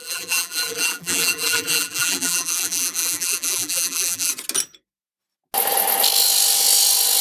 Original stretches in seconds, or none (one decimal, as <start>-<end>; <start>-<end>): 4.3-7.2